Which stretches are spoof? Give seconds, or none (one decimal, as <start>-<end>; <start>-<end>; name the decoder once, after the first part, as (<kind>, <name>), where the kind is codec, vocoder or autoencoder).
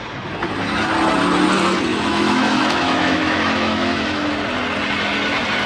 1.9-4.2 (autoencoder, DAC-VAE)